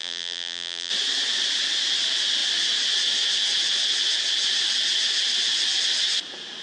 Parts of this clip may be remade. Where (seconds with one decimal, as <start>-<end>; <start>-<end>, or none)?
0.0-0.9